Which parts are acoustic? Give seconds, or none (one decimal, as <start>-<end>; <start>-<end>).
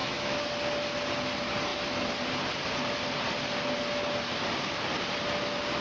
0.5-5.8